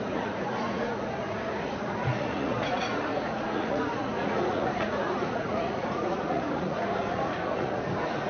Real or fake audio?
fake